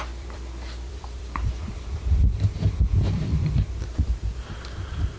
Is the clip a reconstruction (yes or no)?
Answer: yes